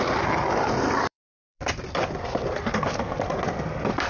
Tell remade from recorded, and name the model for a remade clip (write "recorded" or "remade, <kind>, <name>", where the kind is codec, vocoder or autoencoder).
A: remade, vocoder, BigVGAN v2